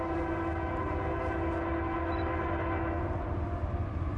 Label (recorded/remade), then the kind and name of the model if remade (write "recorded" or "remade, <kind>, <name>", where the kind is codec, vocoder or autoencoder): recorded